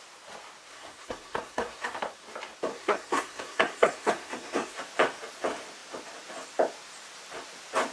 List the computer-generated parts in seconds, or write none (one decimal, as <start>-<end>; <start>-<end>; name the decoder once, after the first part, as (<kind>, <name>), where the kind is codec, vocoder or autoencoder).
0.7-2.0 (codec, SNAC); 2.7-4.8